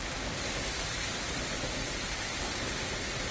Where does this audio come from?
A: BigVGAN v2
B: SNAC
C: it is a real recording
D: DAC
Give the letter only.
C